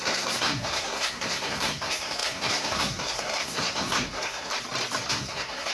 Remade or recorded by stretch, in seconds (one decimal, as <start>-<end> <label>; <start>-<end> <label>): 0.0-4.5 remade; 4.5-5.1 recorded; 5.1-5.7 remade